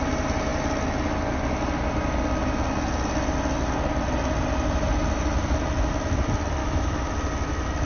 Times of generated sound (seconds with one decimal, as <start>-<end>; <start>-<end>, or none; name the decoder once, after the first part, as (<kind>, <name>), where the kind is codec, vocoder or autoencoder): 6.6-7.1 (autoencoder, DAC-VAE)